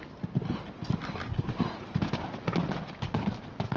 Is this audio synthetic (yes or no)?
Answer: no